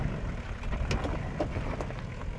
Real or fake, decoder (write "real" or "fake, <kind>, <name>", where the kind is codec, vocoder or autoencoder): real